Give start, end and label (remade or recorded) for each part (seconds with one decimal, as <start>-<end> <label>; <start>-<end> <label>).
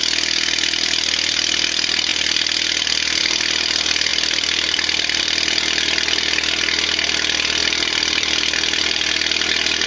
0.0-4.1 recorded; 4.1-5.2 remade; 5.2-7.6 recorded; 7.6-8.8 remade; 8.8-9.9 recorded